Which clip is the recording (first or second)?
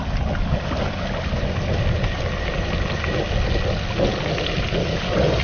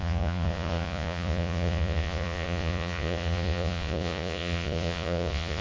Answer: first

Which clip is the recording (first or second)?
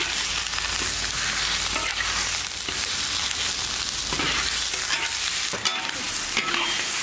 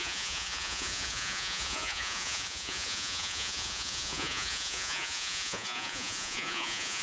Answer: first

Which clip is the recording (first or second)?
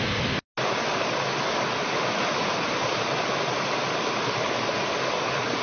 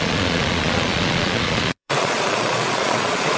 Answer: first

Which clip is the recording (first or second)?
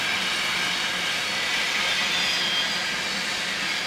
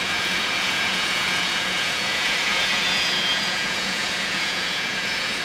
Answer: first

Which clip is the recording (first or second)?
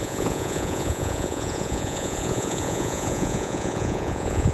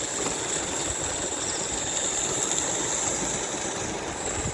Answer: second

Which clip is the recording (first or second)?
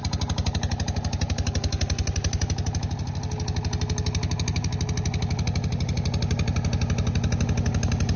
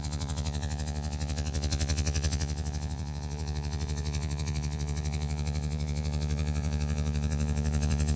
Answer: first